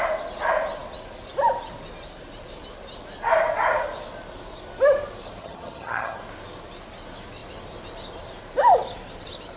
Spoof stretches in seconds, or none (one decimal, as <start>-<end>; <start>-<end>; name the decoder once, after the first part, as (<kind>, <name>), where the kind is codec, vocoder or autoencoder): 5.4-6.2 (vocoder, HiFi-GAN)